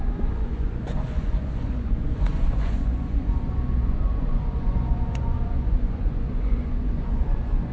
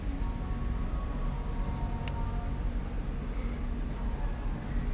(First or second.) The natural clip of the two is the second